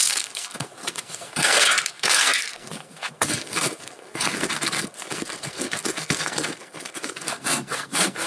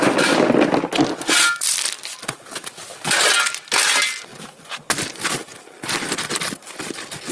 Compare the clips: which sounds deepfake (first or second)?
first